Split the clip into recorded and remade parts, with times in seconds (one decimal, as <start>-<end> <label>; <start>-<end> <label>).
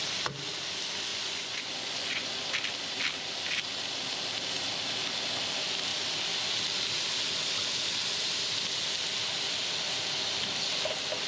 0.0-1.1 recorded; 1.1-2.3 remade; 2.3-11.3 recorded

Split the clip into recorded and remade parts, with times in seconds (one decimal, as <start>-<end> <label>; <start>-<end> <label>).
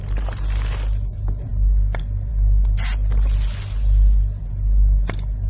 0.0-5.5 recorded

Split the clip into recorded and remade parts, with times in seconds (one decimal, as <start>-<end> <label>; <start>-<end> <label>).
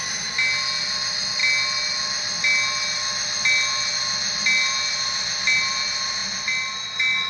0.0-7.3 recorded